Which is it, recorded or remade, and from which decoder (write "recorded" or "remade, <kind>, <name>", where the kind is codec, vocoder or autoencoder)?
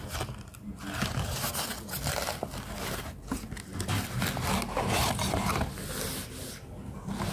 recorded